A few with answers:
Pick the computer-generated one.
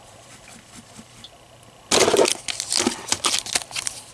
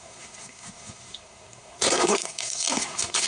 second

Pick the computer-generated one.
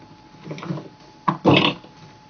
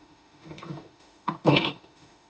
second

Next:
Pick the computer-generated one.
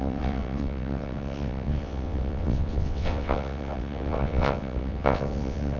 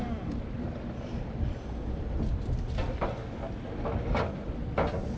first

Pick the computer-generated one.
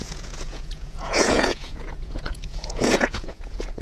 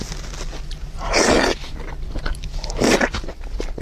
first